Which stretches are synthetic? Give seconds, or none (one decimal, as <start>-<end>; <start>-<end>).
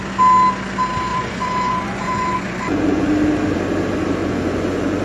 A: 1.1-3.1; 4.2-5.0